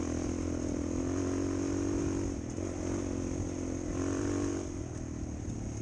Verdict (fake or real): real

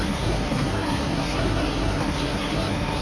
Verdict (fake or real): fake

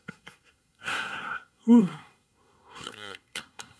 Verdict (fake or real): fake